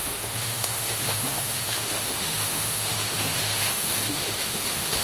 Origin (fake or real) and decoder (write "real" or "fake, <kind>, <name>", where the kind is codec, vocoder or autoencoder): fake, autoencoder, DAC-VAE